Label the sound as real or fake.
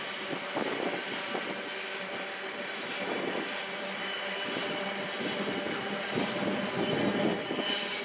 real